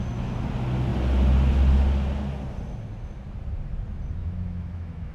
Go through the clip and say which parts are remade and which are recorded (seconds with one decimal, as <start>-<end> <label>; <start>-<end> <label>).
0.0-4.2 recorded; 4.2-5.1 remade